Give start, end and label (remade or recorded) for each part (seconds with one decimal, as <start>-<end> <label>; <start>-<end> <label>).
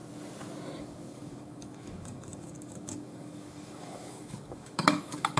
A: 0.0-0.8 recorded; 0.8-5.4 remade